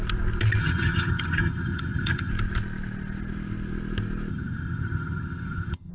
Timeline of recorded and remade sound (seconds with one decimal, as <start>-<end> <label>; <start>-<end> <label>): 0.0-0.6 recorded; 0.6-2.3 remade; 2.3-4.3 recorded; 4.3-5.9 remade